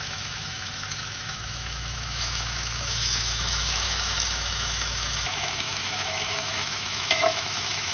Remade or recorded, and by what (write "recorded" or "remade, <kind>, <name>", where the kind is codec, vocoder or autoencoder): remade, autoencoder, DAC-VAE